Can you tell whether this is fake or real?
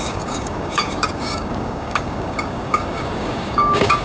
fake